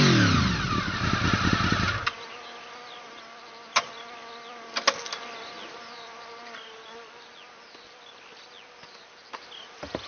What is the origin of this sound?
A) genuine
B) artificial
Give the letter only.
A